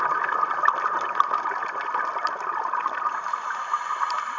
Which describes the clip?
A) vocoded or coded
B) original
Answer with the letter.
B